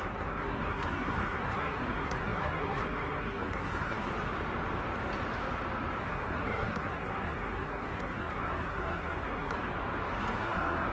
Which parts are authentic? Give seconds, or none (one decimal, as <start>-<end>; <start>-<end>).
4.1-6.0; 9.7-10.2